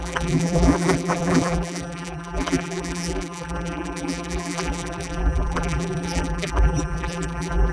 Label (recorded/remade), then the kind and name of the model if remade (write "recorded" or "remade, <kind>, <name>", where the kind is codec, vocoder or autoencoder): remade, vocoder, BigVGAN v2